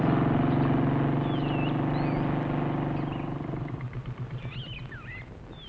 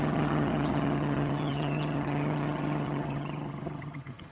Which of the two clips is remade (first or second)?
second